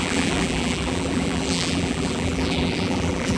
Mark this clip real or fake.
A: fake